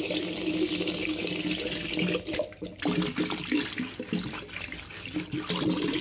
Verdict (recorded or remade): recorded